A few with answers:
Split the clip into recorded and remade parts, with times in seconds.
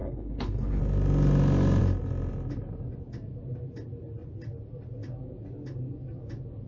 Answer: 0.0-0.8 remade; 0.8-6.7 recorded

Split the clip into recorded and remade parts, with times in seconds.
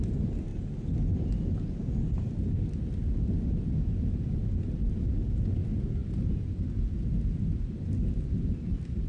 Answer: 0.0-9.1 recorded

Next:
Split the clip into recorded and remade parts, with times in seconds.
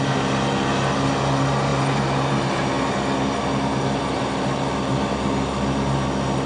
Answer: 0.0-6.5 recorded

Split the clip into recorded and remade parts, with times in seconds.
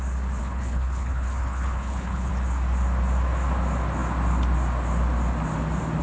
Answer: 0.0-0.4 recorded; 0.4-2.3 remade; 2.3-6.0 recorded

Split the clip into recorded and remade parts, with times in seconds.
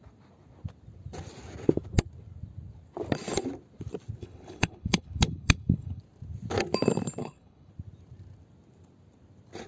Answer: 0.0-4.2 recorded; 4.2-6.0 remade; 6.0-7.2 recorded; 7.2-7.7 remade; 7.7-9.7 recorded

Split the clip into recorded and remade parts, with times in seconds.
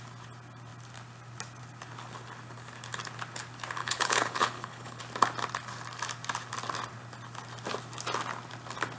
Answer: 0.0-3.8 recorded; 3.8-5.0 remade; 5.0-9.0 recorded